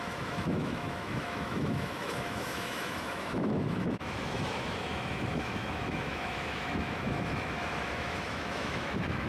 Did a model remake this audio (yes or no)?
yes